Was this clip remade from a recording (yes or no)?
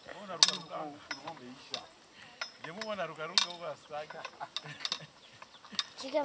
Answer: no